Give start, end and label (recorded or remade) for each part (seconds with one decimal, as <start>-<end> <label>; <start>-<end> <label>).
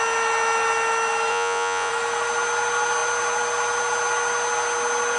0.0-1.3 recorded; 1.3-1.9 remade; 1.9-5.2 recorded